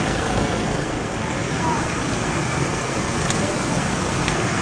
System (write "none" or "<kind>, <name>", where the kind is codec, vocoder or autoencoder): codec, SNAC